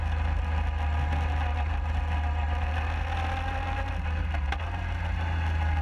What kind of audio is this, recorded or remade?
recorded